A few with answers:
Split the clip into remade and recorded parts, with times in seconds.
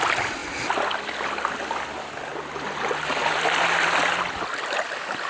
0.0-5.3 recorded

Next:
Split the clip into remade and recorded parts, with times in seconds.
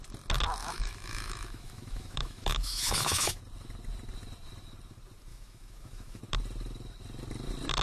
0.0-0.6 recorded; 0.6-3.4 remade; 3.4-5.3 recorded; 5.3-6.2 remade; 6.2-7.8 recorded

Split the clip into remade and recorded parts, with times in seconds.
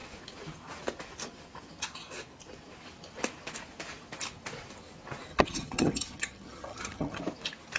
0.0-5.3 recorded; 5.3-7.2 remade; 7.2-7.8 recorded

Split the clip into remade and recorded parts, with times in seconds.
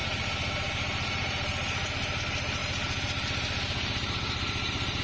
0.0-2.2 remade; 2.2-2.6 recorded; 2.6-5.0 remade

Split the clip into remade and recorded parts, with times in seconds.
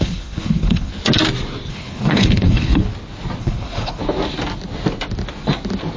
0.0-0.9 remade; 0.9-1.7 recorded; 1.7-2.8 remade; 2.8-3.4 recorded; 3.4-4.0 remade; 4.0-6.0 recorded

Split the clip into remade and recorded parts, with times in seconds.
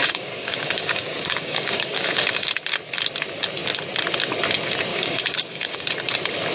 0.0-2.5 remade; 2.5-4.9 recorded; 4.9-5.9 remade; 5.9-6.5 recorded